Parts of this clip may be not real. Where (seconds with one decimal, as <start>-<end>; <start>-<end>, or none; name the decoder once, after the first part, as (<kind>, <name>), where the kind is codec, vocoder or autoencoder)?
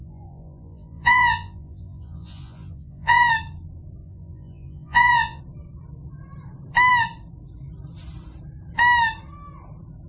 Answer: 0.0-3.3 (vocoder, Vocos); 4.0-5.4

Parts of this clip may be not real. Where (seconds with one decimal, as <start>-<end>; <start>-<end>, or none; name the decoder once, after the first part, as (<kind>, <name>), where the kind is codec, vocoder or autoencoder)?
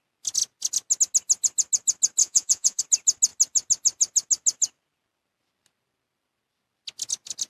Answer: 2.2-2.8 (vocoder, Vocos)